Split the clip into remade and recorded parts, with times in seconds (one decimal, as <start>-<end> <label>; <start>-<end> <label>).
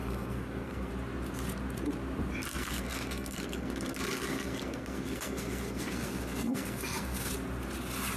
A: 0.0-0.9 remade; 0.9-2.5 recorded; 2.5-7.3 remade; 7.3-8.2 recorded